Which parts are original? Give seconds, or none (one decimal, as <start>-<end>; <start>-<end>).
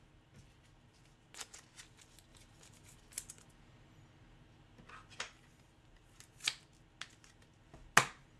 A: 0.0-8.4